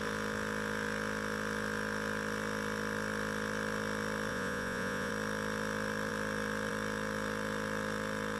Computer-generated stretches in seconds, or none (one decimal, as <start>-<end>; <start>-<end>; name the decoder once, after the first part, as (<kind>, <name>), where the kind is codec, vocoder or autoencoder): 4.3-5.1 (vocoder, Vocos)